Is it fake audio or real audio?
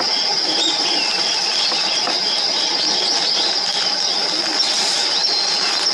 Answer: real